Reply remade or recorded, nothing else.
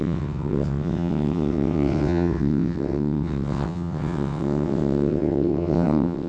remade